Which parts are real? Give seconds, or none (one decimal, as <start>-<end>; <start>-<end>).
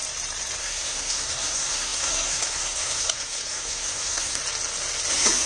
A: 0.0-0.6; 4.4-5.1